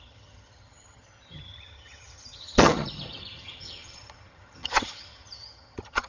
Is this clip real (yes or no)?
no